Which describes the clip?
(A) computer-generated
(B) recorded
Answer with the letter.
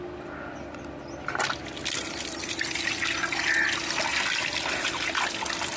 B